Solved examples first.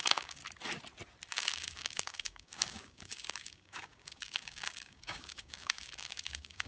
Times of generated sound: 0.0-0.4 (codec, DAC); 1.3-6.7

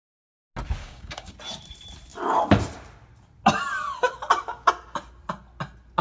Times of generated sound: 0.8-1.3 (codec, DAC)